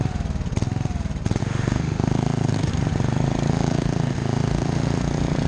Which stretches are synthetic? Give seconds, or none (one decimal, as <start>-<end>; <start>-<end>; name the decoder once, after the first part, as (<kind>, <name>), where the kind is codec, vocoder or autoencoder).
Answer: 1.4-2.7 (autoencoder, DAC-VAE); 3.5-5.0